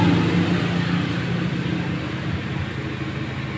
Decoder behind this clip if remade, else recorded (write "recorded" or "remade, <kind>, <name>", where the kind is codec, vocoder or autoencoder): recorded